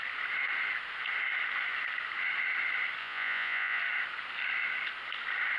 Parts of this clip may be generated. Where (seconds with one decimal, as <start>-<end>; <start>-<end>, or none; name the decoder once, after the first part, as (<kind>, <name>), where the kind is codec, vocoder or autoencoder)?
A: 3.0-3.8 (vocoder, Vocos)